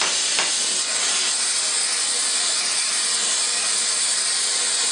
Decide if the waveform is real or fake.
real